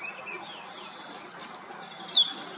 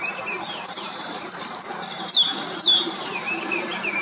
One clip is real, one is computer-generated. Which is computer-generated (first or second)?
second